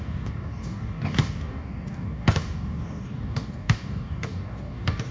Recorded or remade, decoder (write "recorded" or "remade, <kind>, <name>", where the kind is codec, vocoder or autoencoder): remade, codec, DAC